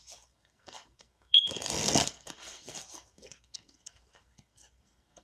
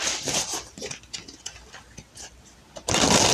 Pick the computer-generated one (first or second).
first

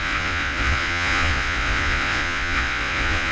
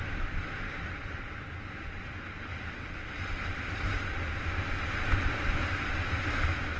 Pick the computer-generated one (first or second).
first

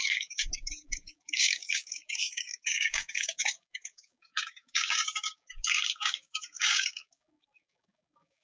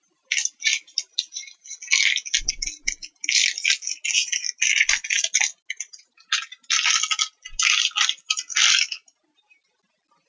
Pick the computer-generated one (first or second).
first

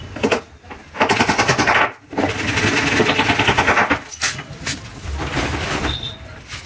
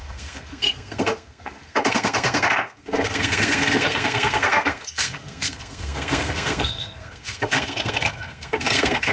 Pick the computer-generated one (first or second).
second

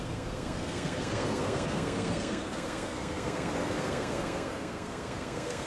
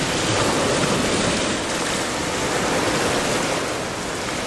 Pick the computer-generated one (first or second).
first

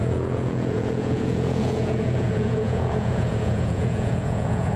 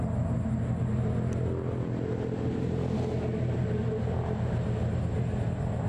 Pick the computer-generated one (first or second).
first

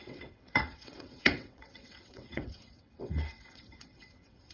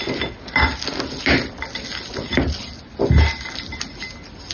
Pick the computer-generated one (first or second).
first